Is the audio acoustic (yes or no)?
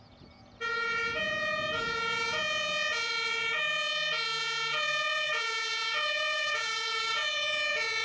no